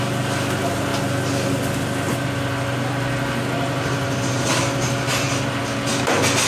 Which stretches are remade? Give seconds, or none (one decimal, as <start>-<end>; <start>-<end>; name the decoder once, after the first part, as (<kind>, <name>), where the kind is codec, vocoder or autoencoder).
none